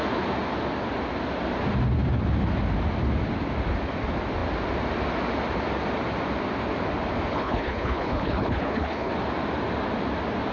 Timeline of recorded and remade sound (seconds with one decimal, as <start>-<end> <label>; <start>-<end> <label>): 0.0-7.3 recorded; 7.3-9.1 remade; 9.1-10.5 recorded